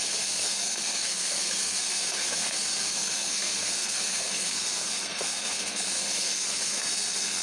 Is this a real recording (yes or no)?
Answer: no